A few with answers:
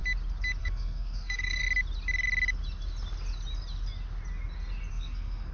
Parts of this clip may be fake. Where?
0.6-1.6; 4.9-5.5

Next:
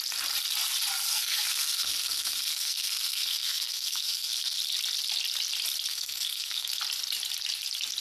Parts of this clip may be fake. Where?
1.1-4.6; 5.9-6.7